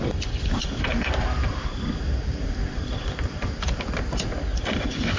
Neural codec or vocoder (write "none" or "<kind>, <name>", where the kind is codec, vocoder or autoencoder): none